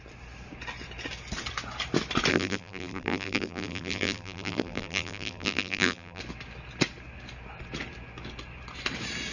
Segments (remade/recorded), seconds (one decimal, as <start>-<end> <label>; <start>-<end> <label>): 0.0-2.3 recorded; 2.3-6.2 remade; 6.2-9.3 recorded